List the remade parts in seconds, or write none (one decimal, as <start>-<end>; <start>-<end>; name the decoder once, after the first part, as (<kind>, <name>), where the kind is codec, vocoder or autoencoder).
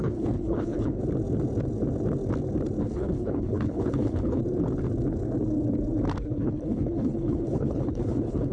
0.0-1.0 (codec, HILCodec); 2.8-4.4; 6.2-8.5